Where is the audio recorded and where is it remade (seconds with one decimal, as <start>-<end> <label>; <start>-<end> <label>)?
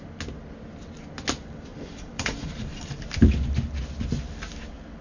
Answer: 0.0-1.7 recorded; 1.7-3.1 remade; 3.1-5.0 recorded